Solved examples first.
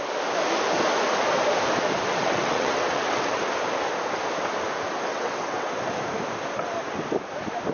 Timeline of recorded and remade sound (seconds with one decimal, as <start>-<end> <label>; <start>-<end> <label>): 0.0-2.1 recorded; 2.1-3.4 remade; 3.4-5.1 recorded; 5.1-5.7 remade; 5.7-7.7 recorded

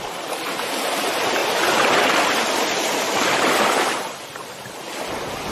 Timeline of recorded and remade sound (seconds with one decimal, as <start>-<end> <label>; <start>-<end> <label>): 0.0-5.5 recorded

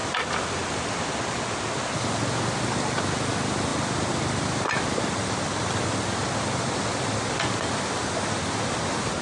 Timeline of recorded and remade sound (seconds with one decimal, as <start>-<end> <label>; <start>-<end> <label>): 0.0-9.2 recorded

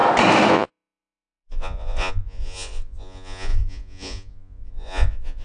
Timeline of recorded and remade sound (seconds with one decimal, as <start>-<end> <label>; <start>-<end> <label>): 0.0-0.5 recorded; 0.5-5.4 remade